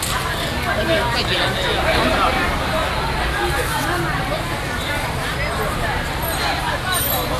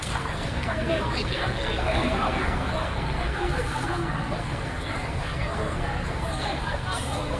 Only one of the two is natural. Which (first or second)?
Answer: first